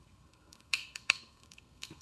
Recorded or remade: remade